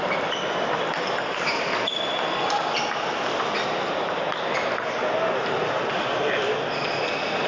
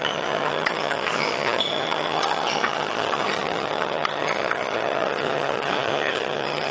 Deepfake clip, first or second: second